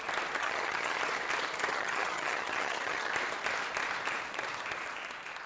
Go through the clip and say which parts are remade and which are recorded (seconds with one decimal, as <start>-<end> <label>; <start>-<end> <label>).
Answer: 0.0-0.4 recorded; 0.4-1.0 remade; 1.0-1.7 recorded; 1.7-3.1 remade; 3.1-5.5 recorded

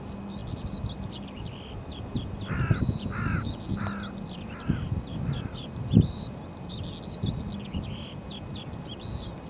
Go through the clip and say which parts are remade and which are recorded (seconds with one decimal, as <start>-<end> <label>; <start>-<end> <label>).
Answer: 0.0-5.1 recorded; 5.1-6.8 remade; 6.8-9.5 recorded

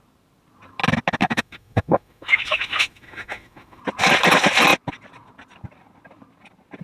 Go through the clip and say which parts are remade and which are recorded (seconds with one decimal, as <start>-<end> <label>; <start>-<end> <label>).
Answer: 0.0-1.2 recorded; 1.2-3.8 remade; 3.8-6.8 recorded

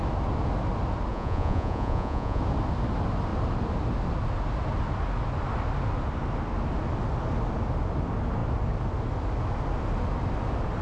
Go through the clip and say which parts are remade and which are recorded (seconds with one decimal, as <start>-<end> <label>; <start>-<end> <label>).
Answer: 0.0-1.1 recorded; 1.1-2.4 remade; 2.4-10.8 recorded

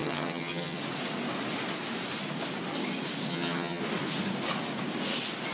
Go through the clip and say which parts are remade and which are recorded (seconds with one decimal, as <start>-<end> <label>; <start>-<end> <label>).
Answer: 0.0-0.8 remade; 0.8-3.3 recorded; 3.3-3.8 remade; 3.8-5.5 recorded